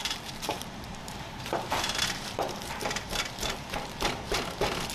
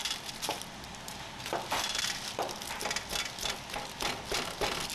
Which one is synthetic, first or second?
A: first